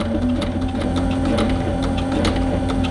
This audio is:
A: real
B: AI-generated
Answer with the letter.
A